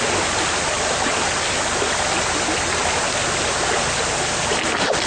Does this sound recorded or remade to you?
recorded